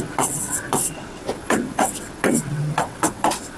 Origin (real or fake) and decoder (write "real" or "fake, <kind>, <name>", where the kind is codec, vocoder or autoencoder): fake, vocoder, WaveNeXt